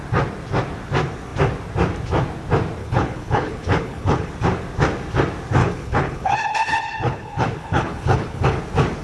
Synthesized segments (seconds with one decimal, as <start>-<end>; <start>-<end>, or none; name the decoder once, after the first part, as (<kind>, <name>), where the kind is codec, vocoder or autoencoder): 2.8-4.3 (codec, HILCodec); 5.6-8.6